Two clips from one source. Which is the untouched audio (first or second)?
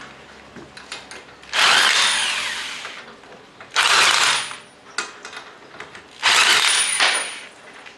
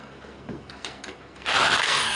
first